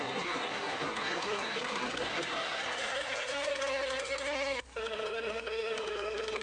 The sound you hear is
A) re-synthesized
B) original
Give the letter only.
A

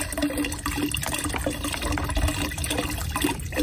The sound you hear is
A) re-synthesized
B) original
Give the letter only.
B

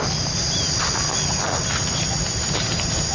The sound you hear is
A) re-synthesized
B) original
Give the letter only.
B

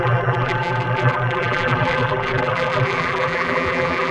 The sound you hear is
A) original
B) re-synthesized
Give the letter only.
B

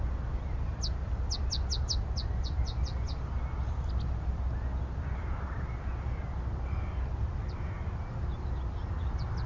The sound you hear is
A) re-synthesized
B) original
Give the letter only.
B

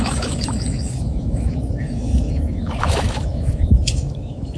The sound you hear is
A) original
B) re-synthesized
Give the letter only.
B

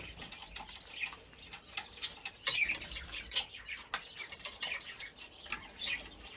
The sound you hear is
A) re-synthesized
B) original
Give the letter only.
B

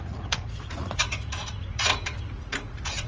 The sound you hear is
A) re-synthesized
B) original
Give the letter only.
A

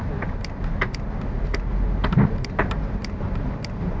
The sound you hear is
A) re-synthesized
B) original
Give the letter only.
B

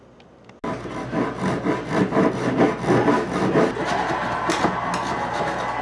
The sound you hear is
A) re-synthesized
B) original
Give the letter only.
B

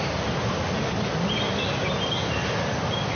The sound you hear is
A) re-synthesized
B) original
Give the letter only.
B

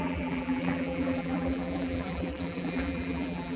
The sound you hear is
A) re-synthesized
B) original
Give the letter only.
A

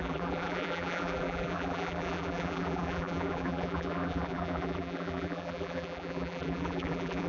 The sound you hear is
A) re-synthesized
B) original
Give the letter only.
A